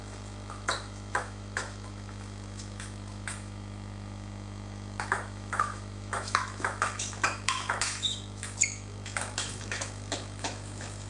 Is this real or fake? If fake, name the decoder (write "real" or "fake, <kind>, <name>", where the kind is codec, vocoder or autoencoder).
fake, autoencoder, DAC-VAE